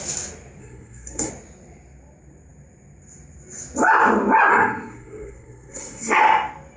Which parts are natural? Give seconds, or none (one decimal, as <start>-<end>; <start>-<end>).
0.0-0.6; 1.3-4.5; 6.2-6.8

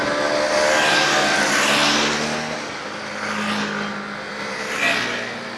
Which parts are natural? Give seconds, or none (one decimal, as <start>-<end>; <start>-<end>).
0.0-5.6

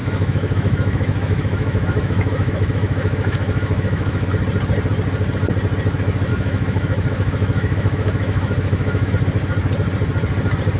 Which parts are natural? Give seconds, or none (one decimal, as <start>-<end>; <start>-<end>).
4.3-6.3; 9.1-10.8

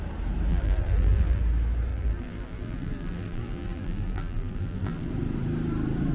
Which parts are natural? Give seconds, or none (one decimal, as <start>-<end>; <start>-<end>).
0.0-0.5; 1.4-1.9; 5.1-6.1

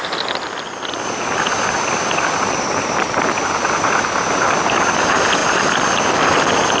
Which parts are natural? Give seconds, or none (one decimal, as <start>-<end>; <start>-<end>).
0.0-6.8

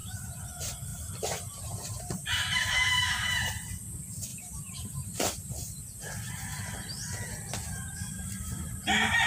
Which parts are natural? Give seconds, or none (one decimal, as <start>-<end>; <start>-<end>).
0.5-0.9; 3.5-4.3; 6.1-9.3

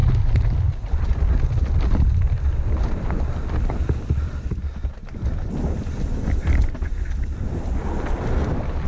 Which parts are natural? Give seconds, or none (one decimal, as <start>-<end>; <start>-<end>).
0.0-8.9

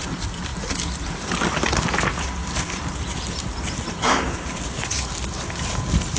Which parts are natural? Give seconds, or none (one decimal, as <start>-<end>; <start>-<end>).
0.0-6.2